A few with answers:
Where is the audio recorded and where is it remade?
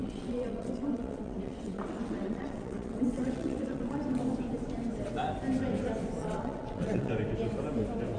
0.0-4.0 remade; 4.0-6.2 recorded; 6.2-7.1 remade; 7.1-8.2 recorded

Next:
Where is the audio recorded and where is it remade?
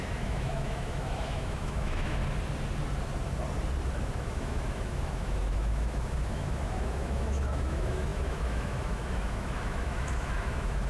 0.0-2.2 remade; 2.2-4.0 recorded; 4.0-10.9 remade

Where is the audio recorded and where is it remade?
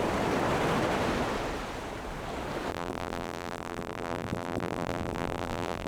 0.0-2.7 recorded; 2.7-5.9 remade